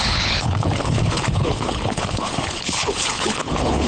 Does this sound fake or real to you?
fake